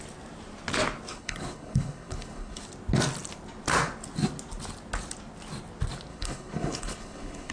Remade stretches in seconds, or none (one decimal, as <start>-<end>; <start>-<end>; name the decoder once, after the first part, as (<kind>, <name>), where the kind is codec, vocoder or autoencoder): 1.1-2.6 (codec, HILCodec); 6.1-7.5